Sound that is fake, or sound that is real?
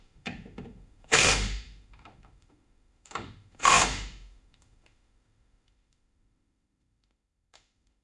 fake